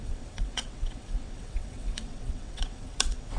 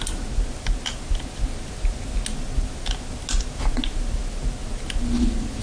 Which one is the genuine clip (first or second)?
second